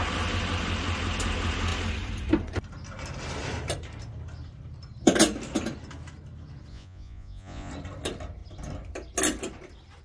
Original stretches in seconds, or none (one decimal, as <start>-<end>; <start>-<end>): 0.0-6.7; 7.7-10.0